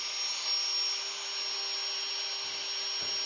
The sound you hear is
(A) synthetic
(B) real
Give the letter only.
B